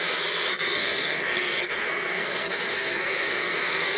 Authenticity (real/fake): fake